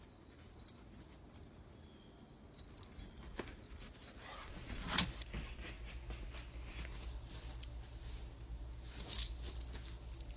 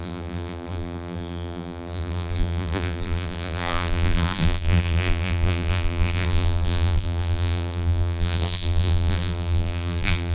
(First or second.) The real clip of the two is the first